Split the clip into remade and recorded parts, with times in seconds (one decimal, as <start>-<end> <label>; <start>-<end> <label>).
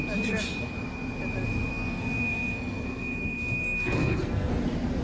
0.0-1.7 recorded; 1.7-4.5 remade; 4.5-5.0 recorded